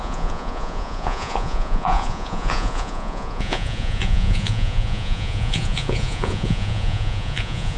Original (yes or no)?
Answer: no